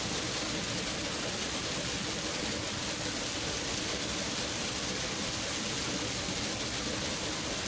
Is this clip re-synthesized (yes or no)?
no